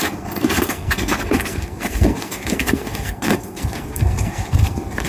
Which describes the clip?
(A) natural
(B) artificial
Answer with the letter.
B